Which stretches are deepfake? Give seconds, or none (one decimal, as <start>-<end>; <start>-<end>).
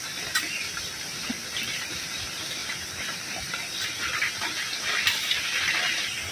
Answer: none